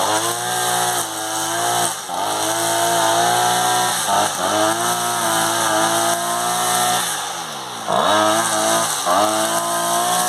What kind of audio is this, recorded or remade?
recorded